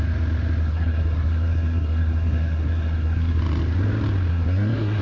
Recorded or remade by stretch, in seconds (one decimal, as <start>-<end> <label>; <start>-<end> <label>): 0.0-0.6 recorded; 0.6-3.4 remade; 3.4-4.3 recorded; 4.3-5.0 remade